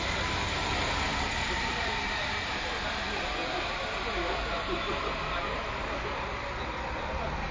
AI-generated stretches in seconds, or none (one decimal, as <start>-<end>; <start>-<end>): none